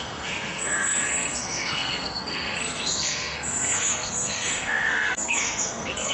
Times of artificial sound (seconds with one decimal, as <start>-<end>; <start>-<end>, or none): 0.0-6.1